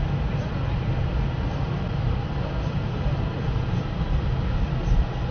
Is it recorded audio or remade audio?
recorded